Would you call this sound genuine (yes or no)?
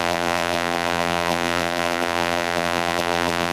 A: no